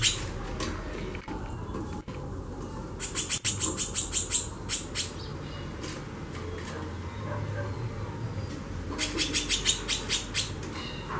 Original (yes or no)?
yes